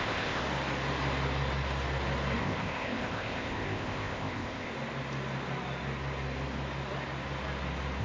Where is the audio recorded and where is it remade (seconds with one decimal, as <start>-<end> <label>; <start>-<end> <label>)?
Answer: 0.0-0.4 remade; 0.4-2.4 recorded; 2.4-4.7 remade; 4.7-8.0 recorded